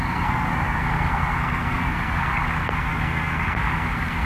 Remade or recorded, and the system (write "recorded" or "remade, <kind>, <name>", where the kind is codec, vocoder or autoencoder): remade, codec, SNAC